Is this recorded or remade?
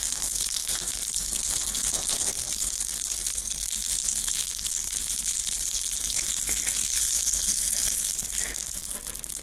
remade